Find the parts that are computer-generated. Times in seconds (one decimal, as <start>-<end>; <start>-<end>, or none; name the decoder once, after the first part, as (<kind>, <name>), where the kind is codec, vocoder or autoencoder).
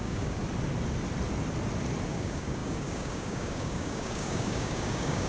0.0-0.4 (codec, DAC); 2.1-5.3